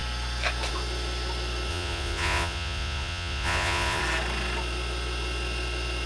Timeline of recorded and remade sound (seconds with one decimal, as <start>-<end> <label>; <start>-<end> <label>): 0.0-1.7 recorded; 1.7-4.0 remade; 4.0-6.1 recorded